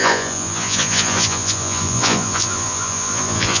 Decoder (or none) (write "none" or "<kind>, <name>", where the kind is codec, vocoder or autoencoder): vocoder, Vocos